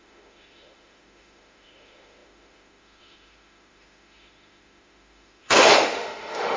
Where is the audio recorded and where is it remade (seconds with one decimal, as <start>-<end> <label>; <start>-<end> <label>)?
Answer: 0.0-6.6 remade

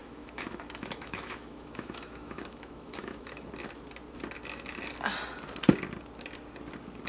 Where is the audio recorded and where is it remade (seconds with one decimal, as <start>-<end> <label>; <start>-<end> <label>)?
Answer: 0.0-3.5 remade; 3.5-7.1 recorded